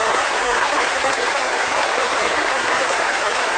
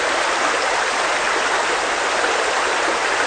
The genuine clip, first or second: second